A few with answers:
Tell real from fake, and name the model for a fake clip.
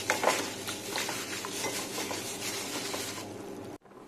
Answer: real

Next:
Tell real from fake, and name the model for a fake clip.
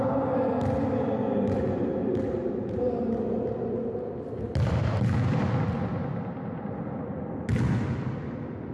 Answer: real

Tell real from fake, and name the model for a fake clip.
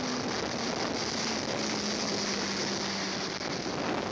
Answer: real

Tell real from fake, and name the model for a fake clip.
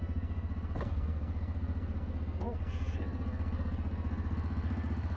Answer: fake, codec, SNAC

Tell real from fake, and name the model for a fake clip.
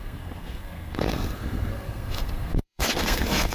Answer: fake, codec, SNAC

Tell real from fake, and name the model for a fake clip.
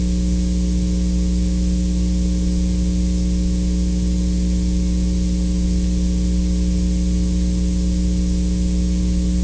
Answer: real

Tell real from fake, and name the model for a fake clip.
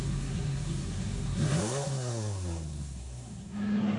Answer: fake, codec, SNAC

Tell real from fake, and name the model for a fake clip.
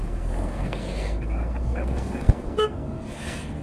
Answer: fake, codec, SNAC